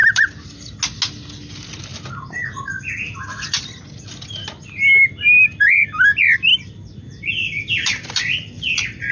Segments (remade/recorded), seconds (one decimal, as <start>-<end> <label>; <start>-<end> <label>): 0.0-0.8 remade; 0.8-1.9 recorded; 1.9-4.3 remade; 4.3-6.5 recorded; 6.5-9.1 remade